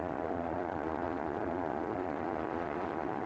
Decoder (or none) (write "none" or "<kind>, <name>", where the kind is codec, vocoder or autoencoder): vocoder, Vocos